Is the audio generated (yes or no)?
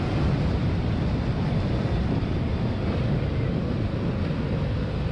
yes